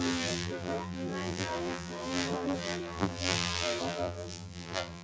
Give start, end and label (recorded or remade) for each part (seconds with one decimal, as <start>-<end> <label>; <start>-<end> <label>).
0.0-5.0 remade